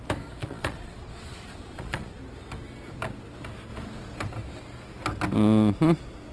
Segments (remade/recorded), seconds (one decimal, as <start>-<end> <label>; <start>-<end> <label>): 0.0-0.4 recorded; 0.4-2.2 remade; 2.2-6.3 recorded